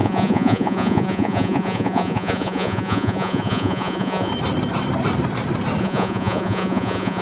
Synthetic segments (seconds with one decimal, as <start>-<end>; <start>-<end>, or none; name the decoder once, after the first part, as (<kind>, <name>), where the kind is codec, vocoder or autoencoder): 0.0-4.3 (vocoder, Vocos); 5.8-7.2